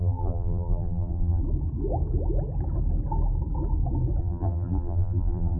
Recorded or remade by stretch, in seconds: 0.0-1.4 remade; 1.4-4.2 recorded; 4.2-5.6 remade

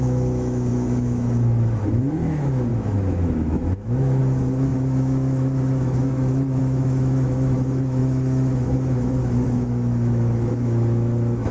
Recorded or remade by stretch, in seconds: 0.0-11.5 remade

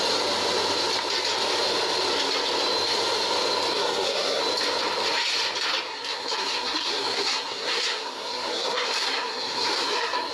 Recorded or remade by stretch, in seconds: 0.0-3.7 recorded; 3.7-4.4 remade; 4.4-5.9 recorded; 5.9-10.3 remade